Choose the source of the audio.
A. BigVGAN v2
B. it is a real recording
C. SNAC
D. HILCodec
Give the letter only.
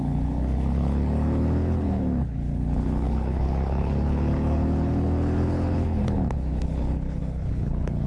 D